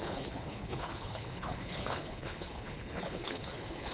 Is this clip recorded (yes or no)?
no